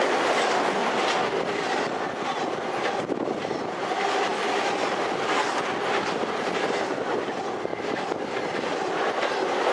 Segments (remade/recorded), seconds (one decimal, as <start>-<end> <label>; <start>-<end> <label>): 0.0-9.7 recorded